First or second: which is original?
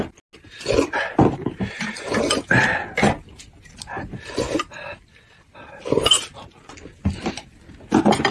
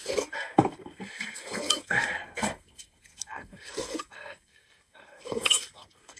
first